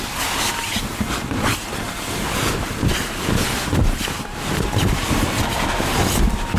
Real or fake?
real